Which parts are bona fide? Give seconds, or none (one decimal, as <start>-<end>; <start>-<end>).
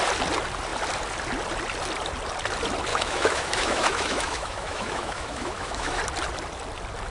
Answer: 0.0-2.9; 6.0-7.1